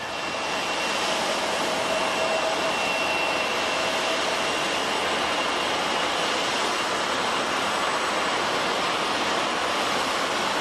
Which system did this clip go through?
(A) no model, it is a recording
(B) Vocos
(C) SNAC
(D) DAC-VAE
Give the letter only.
A